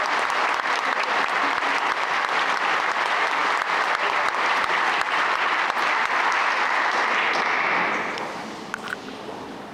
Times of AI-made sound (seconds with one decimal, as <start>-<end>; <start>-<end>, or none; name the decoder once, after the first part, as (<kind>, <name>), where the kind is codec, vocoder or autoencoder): none